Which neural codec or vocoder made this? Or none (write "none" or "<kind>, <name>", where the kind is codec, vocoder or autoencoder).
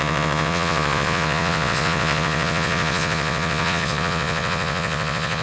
vocoder, Vocos